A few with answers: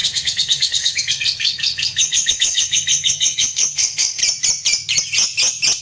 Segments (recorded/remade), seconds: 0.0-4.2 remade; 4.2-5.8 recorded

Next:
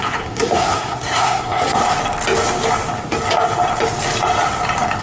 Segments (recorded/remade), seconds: 0.0-1.8 remade; 1.8-5.0 recorded

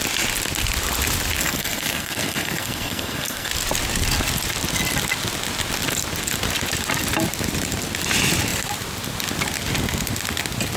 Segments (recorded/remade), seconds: 0.0-1.4 recorded; 1.4-3.5 remade; 3.5-10.8 recorded

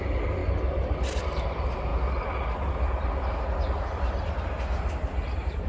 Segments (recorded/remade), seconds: 0.0-5.7 recorded

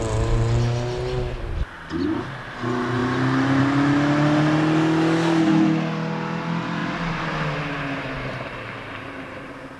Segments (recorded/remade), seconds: 0.0-9.8 recorded

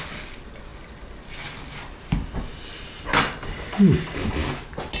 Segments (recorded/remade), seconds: 0.0-5.0 recorded

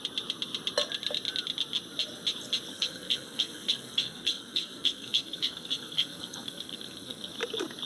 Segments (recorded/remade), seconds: 0.0-2.7 recorded; 2.7-7.4 remade; 7.4-7.9 recorded

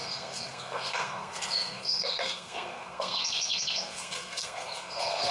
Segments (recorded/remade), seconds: 0.0-5.3 remade